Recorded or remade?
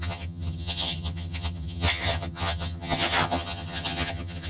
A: remade